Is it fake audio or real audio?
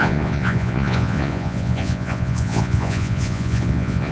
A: fake